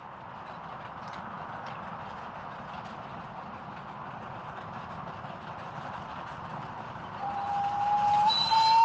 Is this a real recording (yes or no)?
yes